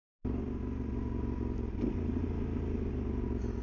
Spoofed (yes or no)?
no